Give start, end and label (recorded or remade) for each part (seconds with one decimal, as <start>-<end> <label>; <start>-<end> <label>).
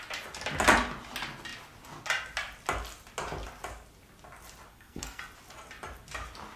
0.0-4.7 recorded; 4.7-5.2 remade; 5.2-6.6 recorded